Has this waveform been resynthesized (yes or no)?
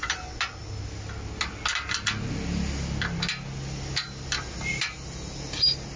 no